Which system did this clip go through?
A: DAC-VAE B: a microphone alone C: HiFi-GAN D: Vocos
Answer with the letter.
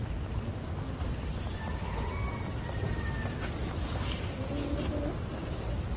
B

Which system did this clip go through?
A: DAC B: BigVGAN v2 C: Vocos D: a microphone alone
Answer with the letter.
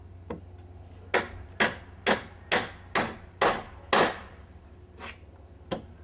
D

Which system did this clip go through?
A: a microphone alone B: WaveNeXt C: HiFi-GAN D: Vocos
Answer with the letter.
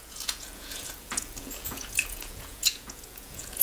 D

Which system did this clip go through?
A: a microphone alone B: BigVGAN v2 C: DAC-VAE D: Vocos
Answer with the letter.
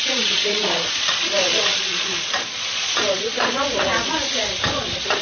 D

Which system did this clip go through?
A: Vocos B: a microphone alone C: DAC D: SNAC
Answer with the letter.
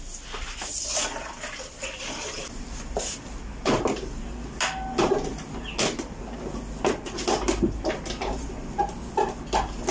B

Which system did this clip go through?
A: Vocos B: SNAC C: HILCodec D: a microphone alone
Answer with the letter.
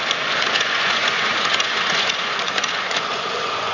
A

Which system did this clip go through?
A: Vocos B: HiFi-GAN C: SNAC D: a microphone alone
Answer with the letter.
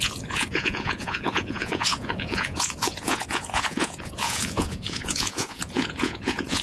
A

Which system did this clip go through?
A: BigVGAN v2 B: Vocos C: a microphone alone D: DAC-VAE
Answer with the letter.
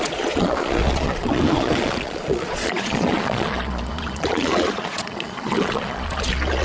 B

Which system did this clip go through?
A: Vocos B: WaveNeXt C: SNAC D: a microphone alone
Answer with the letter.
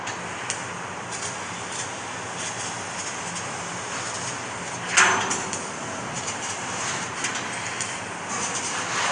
D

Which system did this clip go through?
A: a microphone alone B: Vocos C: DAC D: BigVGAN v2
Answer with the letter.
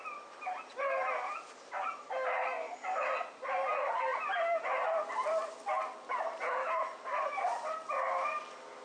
A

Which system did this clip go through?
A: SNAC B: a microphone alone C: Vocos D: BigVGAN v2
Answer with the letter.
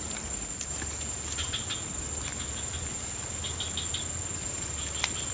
B